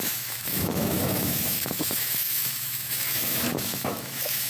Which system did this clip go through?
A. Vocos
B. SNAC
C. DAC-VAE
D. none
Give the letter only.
C